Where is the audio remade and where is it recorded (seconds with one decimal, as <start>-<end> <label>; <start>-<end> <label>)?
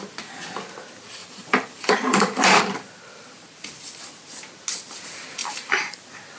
0.0-1.2 recorded; 1.2-2.6 remade; 2.6-5.4 recorded; 5.4-6.0 remade; 6.0-6.4 recorded